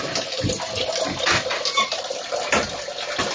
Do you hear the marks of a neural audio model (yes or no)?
no